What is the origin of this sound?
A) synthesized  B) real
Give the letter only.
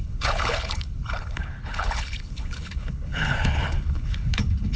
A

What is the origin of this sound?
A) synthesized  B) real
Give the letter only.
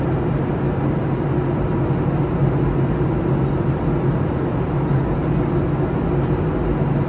B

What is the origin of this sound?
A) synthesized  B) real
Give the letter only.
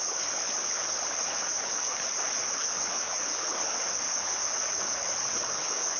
A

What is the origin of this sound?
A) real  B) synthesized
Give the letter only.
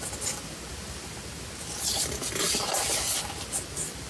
A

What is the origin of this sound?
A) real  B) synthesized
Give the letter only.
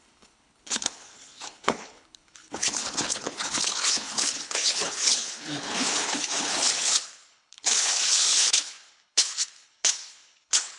B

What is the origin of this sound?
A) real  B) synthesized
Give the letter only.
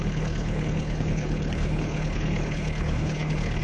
B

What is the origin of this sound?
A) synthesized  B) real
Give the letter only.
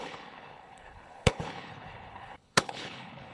A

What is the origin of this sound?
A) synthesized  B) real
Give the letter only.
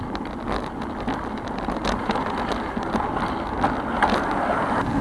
B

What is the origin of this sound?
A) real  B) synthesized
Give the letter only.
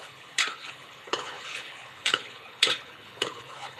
B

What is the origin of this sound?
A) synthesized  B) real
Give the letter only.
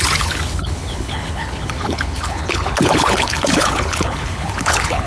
A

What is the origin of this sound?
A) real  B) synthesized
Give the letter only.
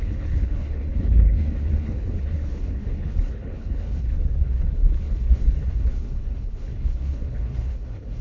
B